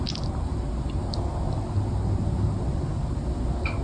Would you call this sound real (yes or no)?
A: yes